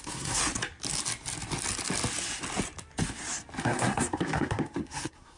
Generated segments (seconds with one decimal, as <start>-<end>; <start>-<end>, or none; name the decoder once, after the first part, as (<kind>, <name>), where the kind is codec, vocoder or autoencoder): 0.0-0.4 (codec, SNAC); 3.6-5.4